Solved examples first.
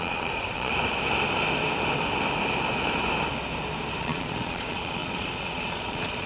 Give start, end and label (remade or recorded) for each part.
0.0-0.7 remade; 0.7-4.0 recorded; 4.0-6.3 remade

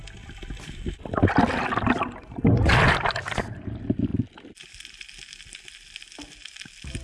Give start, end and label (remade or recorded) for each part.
0.0-7.0 recorded

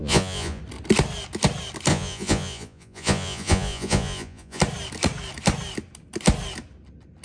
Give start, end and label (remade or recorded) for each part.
0.0-0.6 remade; 0.6-1.9 recorded; 1.9-4.6 remade; 4.6-7.2 recorded

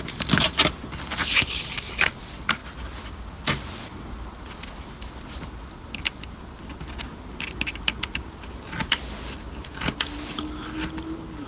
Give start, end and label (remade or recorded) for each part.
0.0-11.5 recorded

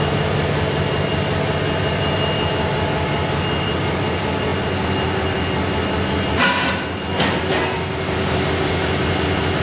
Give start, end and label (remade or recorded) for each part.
0.0-9.6 recorded